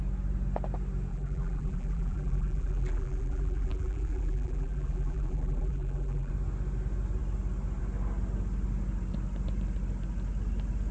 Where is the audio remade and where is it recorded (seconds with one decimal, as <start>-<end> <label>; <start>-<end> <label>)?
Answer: 0.0-1.1 recorded; 1.1-6.3 remade; 6.3-10.9 recorded